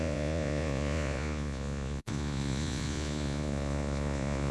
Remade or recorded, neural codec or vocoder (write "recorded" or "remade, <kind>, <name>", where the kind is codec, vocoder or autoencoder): remade, vocoder, Vocos